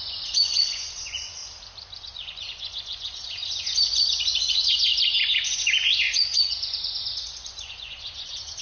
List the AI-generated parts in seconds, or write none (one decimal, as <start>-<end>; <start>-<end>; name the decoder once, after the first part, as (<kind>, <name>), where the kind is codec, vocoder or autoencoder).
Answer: 0.0-1.4 (vocoder, Vocos); 2.0-3.4; 4.4-4.9; 5.5-8.6